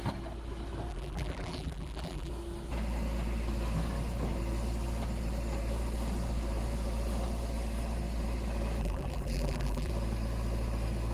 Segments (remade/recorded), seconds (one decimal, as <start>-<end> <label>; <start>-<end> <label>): 0.0-0.9 recorded; 0.9-2.3 remade; 2.3-8.8 recorded; 8.8-9.9 remade; 9.9-11.1 recorded